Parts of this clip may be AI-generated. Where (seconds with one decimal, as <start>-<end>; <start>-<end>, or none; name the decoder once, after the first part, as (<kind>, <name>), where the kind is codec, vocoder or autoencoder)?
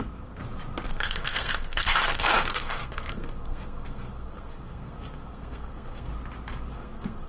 0.0-0.4 (codec, SNAC); 0.9-6.1; 6.7-7.3